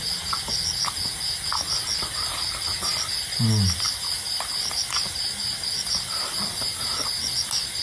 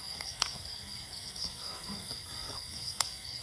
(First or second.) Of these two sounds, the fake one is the second